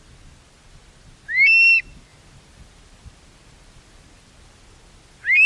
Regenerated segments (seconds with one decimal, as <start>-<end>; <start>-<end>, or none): none

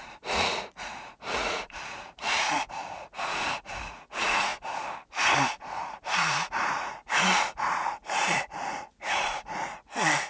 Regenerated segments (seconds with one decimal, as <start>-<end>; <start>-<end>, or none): 0.0-4.5; 5.6-10.3

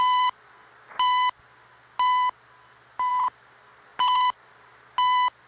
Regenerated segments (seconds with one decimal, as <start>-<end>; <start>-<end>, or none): none

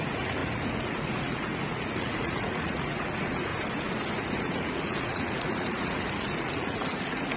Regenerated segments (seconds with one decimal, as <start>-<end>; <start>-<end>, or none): 0.0-3.5; 4.1-7.4

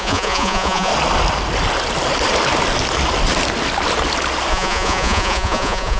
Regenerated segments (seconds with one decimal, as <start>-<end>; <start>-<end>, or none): 0.0-0.9; 4.5-6.0

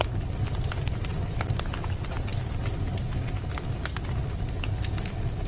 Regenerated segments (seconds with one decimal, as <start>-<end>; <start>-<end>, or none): none

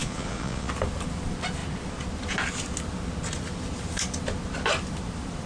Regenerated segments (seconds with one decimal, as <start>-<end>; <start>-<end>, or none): 0.0-0.7